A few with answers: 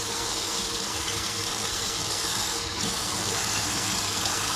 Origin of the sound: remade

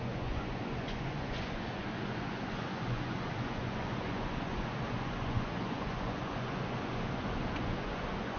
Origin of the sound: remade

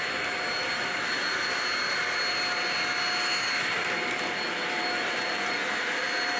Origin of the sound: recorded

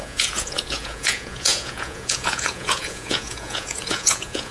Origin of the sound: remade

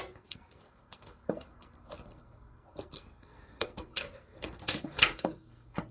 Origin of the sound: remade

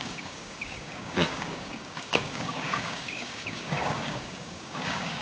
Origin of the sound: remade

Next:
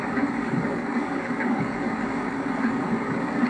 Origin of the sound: remade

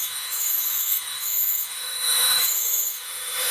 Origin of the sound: remade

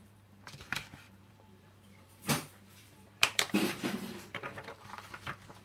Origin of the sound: remade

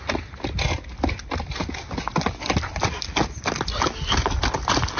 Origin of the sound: recorded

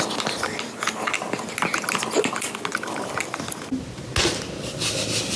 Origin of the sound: recorded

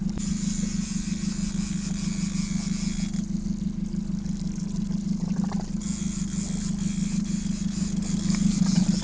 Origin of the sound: recorded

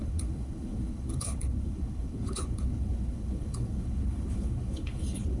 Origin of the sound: remade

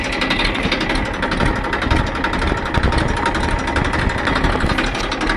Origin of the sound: recorded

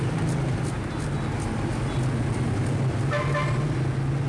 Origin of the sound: recorded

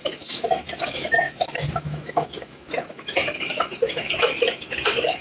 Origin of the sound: remade